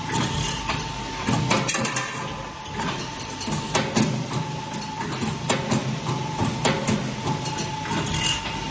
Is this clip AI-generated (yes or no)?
no